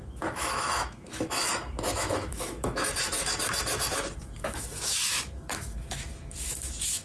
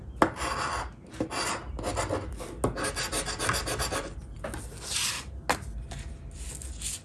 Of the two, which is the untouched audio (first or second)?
second